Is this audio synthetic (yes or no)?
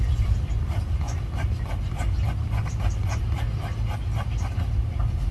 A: no